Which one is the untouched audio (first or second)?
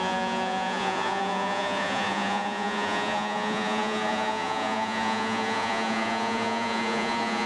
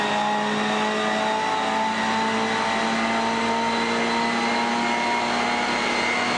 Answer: second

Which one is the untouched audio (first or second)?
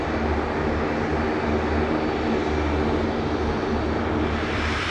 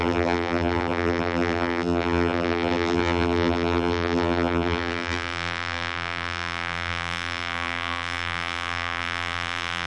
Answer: first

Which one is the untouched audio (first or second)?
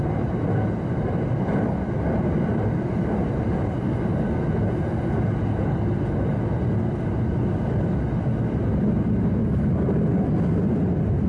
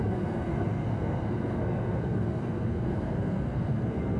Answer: first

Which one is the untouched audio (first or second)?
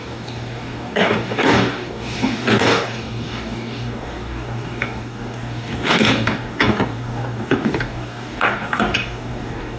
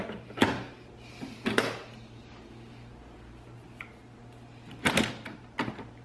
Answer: second